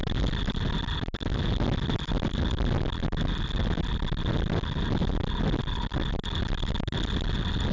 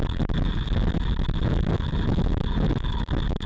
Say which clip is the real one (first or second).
first